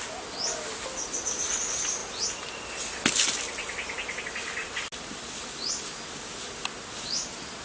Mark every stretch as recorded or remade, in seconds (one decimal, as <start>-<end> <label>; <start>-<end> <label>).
0.0-7.6 recorded